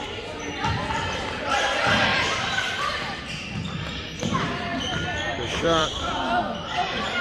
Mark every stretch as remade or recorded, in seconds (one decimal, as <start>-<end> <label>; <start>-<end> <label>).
0.0-2.1 recorded; 2.1-6.4 remade; 6.4-7.2 recorded